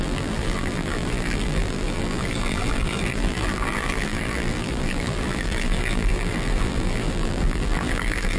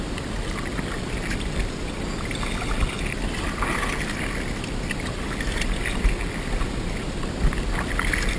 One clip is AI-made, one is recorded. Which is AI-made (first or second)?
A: first